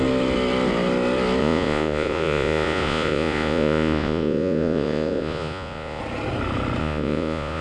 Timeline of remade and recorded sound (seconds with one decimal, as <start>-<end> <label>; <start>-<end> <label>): 0.0-1.4 recorded; 1.4-6.0 remade; 6.0-6.8 recorded; 6.8-7.6 remade